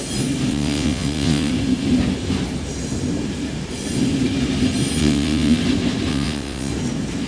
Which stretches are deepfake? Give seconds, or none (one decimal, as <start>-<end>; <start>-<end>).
0.5-1.5; 5.0-5.6; 6.1-6.7